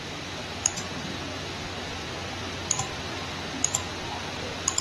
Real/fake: real